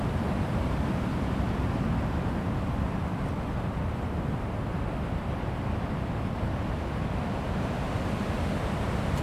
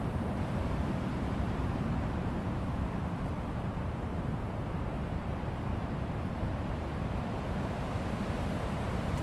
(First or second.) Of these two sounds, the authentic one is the first